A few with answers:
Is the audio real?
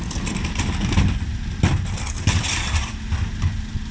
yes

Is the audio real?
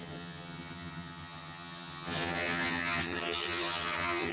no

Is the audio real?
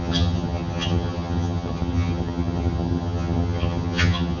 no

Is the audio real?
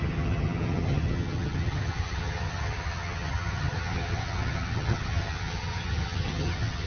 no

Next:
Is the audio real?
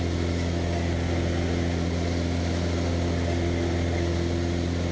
yes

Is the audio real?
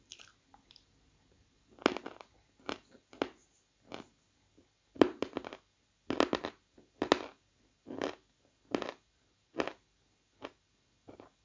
yes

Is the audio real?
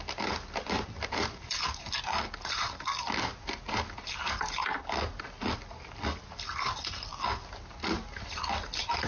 yes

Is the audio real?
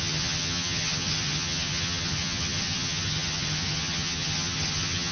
no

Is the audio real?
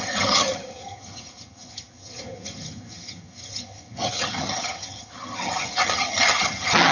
no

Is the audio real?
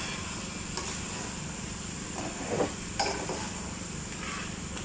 yes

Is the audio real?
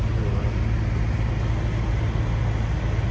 yes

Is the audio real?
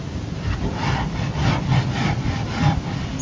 yes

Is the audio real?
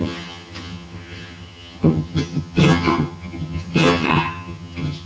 no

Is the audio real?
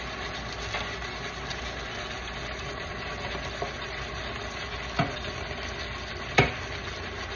yes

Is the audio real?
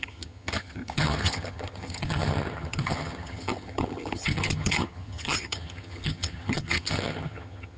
no